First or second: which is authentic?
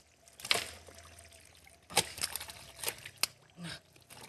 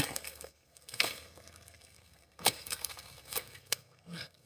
first